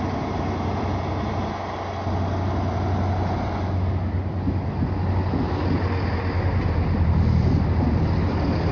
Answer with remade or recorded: recorded